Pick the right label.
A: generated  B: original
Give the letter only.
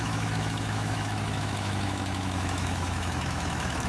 A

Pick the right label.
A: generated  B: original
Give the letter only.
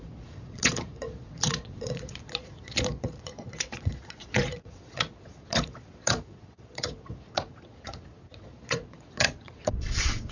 A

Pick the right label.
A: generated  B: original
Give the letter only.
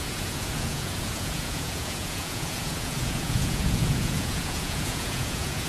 A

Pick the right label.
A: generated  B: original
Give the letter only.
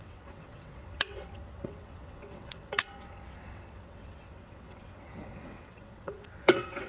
A